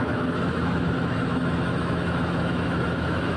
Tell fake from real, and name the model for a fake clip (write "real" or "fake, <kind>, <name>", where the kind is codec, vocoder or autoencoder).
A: fake, autoencoder, DAC-VAE